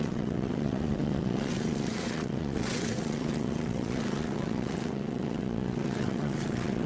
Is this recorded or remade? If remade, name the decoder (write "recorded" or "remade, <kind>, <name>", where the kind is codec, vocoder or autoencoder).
remade, vocoder, WaveNeXt